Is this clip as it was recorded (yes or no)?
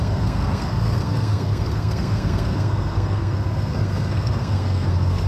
no